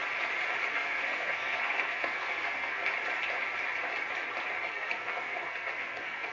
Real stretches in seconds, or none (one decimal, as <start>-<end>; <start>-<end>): 0.0-0.7; 2.8-4.7